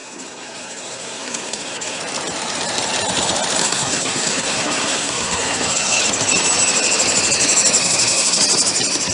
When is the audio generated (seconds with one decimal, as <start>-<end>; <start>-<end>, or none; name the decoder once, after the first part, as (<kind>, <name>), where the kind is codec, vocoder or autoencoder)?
0.0-2.0 (codec, SNAC); 3.6-6.0; 7.8-8.4